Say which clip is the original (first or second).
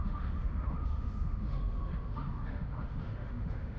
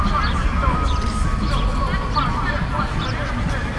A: second